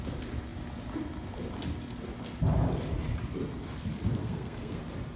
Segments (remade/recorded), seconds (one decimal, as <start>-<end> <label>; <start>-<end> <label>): 0.0-4.2 recorded; 4.2-4.8 remade; 4.8-5.2 recorded